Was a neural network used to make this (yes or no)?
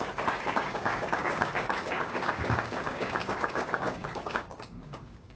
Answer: yes